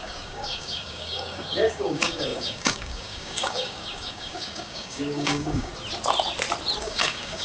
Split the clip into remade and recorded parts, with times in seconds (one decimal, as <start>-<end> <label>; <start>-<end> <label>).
0.0-5.7 remade; 5.7-6.8 recorded; 6.8-7.4 remade